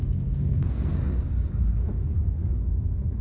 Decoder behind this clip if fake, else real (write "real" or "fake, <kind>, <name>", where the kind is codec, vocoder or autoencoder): fake, codec, SNAC